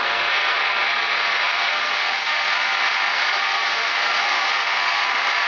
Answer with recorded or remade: remade